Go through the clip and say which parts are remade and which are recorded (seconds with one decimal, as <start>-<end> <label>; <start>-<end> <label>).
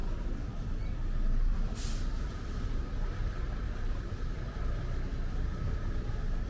0.0-6.5 recorded